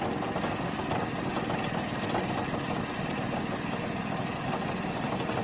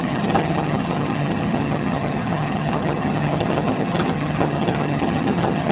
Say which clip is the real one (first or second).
first